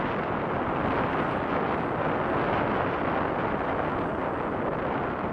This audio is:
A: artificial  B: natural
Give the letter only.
B